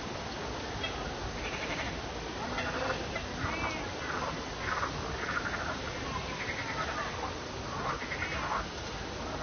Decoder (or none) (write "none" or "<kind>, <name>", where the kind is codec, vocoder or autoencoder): none